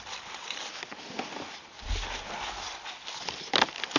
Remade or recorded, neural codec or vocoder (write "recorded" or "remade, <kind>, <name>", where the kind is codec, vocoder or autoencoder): recorded